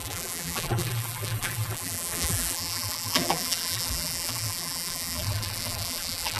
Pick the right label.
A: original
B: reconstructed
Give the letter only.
B